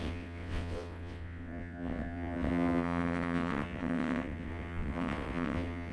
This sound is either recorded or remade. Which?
remade